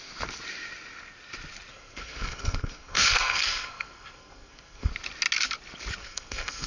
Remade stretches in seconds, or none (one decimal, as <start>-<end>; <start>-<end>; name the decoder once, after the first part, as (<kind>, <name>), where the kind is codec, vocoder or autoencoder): 1.7-4.9 (codec, SNAC); 6.0-6.7